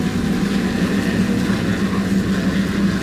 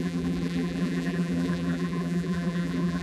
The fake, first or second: second